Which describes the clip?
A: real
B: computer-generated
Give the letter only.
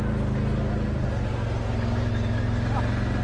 A